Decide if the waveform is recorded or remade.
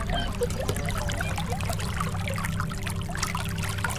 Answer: recorded